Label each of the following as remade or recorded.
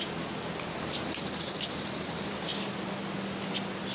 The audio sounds recorded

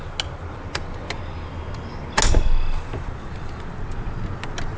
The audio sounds recorded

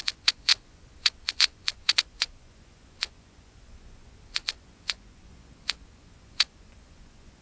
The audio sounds remade